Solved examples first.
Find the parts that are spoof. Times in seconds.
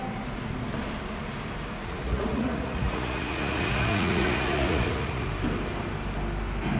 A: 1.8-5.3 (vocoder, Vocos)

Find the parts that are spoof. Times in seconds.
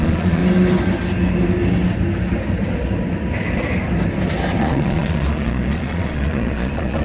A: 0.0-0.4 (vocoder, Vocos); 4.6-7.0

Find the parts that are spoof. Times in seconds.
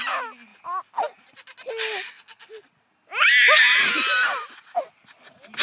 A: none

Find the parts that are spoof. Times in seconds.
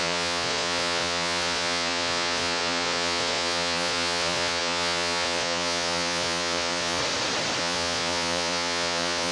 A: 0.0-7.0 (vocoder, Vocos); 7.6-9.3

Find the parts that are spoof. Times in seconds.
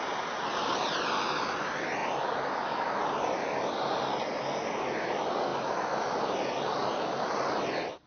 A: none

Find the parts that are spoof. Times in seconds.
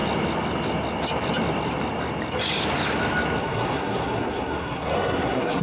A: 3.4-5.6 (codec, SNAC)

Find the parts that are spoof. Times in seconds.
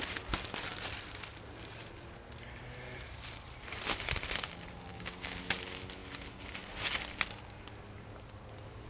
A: 4.9-5.4 (codec, DAC)